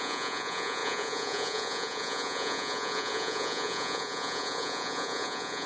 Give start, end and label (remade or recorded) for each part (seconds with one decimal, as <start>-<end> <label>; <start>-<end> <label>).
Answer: 0.0-5.7 remade